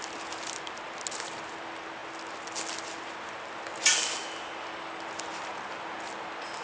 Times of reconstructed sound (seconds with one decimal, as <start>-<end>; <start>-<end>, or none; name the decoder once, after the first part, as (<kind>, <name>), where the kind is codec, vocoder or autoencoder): none